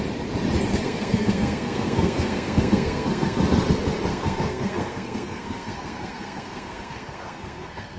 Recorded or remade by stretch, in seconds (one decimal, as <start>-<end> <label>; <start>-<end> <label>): 0.0-0.7 recorded; 0.7-3.4 remade; 3.4-4.1 recorded; 4.1-8.0 remade